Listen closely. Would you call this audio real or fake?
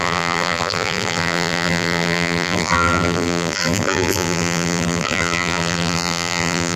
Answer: fake